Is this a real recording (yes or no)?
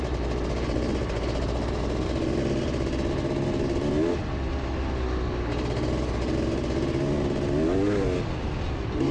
yes